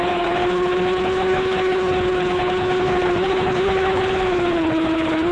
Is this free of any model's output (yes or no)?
no